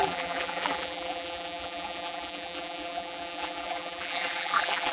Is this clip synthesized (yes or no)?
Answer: yes